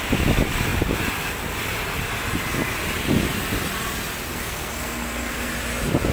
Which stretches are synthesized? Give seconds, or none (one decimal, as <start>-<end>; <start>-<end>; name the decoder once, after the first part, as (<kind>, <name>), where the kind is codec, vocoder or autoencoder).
4.3-5.5 (codec, SNAC)